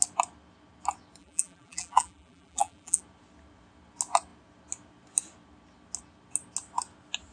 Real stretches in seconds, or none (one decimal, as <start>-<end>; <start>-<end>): 0.0-1.2; 3.0-7.3